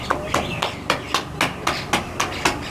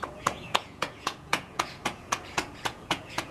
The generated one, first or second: second